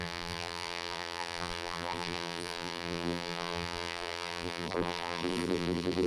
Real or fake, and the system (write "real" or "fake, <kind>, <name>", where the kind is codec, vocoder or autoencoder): fake, vocoder, BigVGAN v2